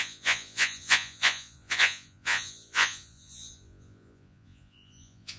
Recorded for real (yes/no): no